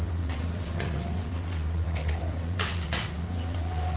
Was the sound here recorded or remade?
remade